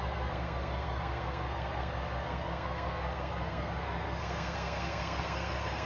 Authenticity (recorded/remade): remade